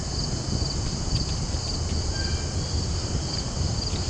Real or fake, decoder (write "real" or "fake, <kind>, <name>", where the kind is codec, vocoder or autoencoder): real